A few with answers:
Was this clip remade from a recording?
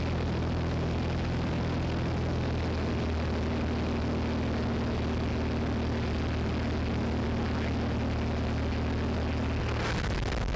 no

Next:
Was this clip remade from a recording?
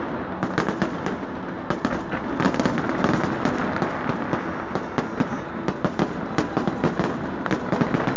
no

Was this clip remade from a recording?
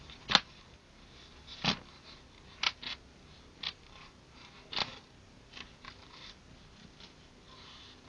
no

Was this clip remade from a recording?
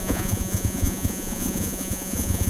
yes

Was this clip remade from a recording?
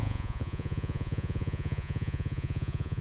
yes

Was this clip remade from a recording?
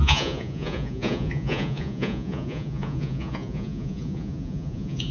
yes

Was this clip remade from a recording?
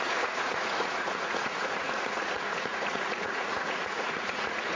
yes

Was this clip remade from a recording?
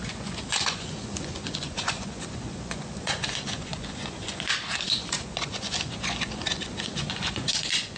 yes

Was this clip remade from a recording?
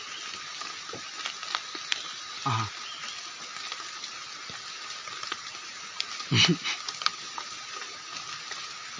no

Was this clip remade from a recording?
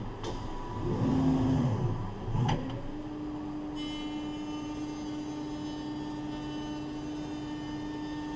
no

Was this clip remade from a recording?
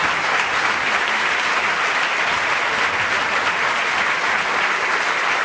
no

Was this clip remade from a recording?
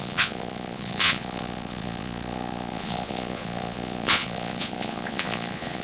yes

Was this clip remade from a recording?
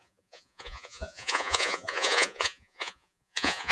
yes